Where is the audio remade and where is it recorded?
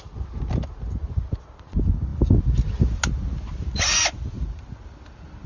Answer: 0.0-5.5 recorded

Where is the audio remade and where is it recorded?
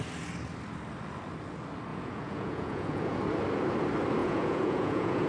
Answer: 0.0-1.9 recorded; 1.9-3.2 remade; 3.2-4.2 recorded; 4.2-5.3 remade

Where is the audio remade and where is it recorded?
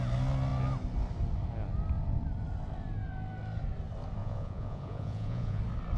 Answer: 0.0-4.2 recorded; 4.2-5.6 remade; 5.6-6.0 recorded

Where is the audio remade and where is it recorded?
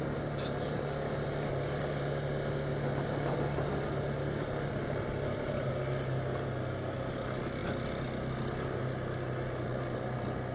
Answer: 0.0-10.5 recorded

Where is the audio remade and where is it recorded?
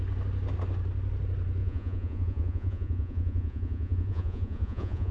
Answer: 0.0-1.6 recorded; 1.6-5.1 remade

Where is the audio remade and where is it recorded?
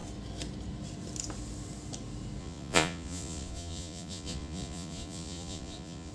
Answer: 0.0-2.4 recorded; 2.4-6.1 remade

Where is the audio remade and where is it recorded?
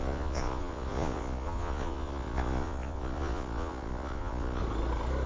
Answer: 0.0-4.6 remade; 4.6-5.3 recorded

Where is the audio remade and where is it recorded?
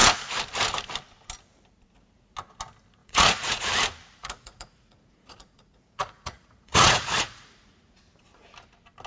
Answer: 0.0-3.0 recorded; 3.0-3.7 remade; 3.7-4.2 recorded; 4.2-8.0 remade; 8.0-9.1 recorded